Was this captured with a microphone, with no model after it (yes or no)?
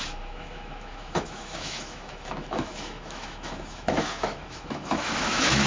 no